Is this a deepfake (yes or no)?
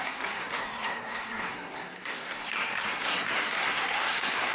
yes